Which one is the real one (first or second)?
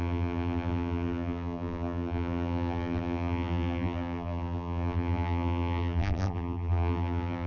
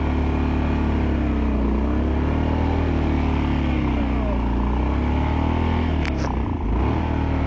second